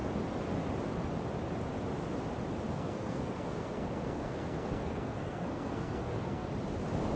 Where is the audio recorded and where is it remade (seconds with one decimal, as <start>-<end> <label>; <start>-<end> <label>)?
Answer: 0.0-2.7 recorded; 2.7-6.5 remade; 6.5-7.2 recorded

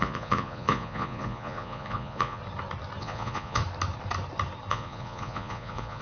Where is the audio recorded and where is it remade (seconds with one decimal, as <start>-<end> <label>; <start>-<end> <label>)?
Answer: 0.0-2.4 remade; 2.4-3.0 recorded; 3.0-3.6 remade; 3.6-4.7 recorded; 4.7-6.0 remade